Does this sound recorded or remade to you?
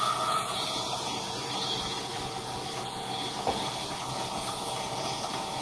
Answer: remade